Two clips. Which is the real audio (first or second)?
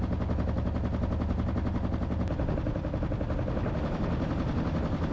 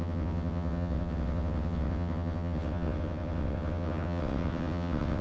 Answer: first